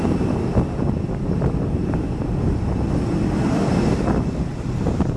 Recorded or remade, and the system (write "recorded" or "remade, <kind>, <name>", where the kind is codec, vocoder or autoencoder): recorded